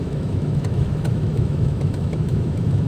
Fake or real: fake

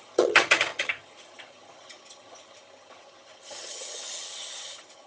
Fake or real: fake